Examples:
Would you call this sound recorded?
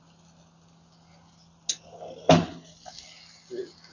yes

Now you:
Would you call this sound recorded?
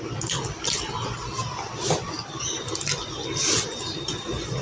yes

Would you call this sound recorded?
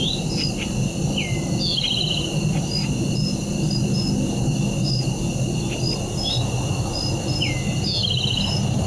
yes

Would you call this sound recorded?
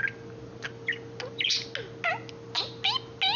yes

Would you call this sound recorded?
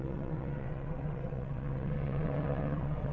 no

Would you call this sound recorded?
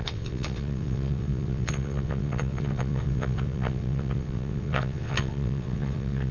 no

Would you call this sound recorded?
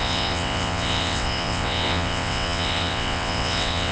no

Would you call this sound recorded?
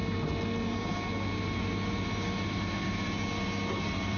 yes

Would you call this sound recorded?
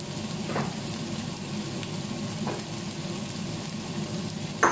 yes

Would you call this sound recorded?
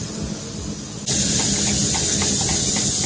yes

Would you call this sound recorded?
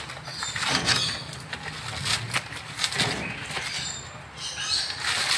yes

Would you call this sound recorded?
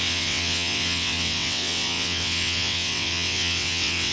no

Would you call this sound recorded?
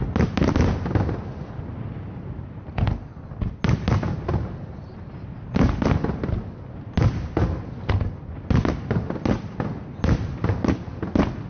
yes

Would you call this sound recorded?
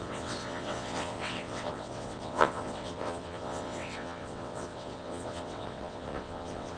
no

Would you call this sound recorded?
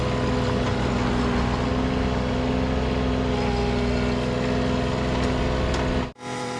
yes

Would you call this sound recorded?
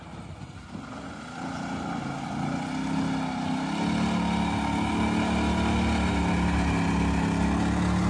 yes